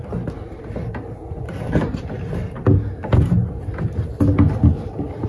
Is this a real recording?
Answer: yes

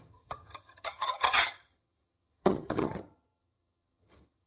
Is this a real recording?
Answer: no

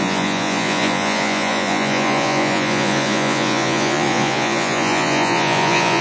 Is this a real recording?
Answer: no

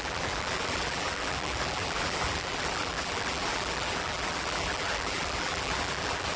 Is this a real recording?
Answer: no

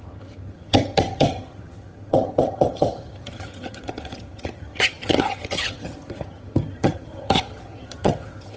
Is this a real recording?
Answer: no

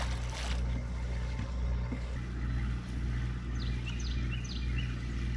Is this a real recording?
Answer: yes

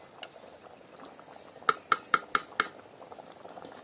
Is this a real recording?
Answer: yes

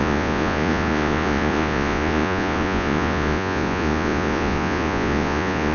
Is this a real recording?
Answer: no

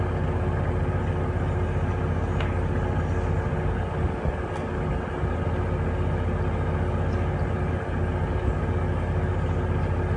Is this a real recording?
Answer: yes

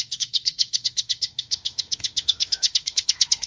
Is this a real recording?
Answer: no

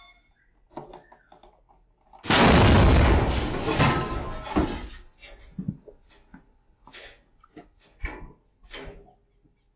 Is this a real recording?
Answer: yes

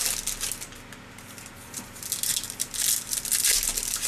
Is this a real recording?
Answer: yes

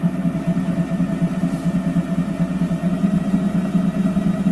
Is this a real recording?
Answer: yes